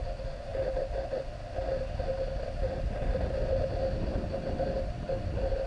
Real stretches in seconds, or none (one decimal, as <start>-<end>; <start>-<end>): 0.0-5.7